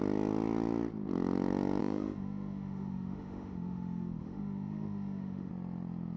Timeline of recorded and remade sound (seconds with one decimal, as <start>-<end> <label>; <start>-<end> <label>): 0.0-1.8 recorded; 1.8-5.5 remade; 5.5-6.2 recorded